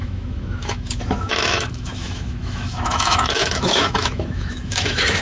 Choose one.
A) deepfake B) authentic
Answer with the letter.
A